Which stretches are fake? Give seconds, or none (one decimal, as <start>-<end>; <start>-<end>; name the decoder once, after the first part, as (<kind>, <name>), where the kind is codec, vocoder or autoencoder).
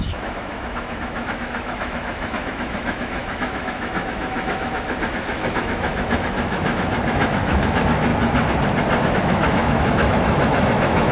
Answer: 0.0-8.1 (autoencoder, DAC-VAE); 9.1-11.1